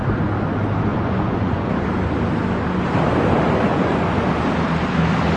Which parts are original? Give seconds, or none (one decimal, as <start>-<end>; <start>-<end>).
0.0-0.9; 1.7-3.7; 4.2-5.4